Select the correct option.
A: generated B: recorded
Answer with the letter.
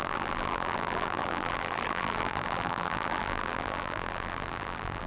A